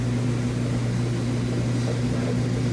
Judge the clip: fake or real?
real